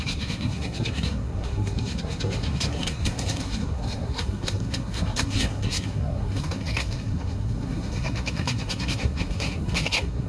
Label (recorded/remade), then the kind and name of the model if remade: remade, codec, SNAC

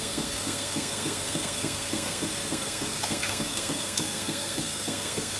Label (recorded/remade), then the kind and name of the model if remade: remade, codec, SNAC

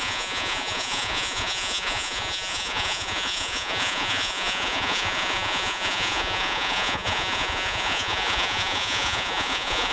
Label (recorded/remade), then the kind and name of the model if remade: remade, vocoder, Vocos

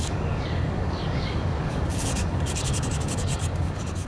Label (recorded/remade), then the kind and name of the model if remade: remade, codec, DAC